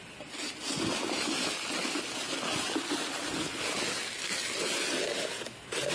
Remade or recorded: recorded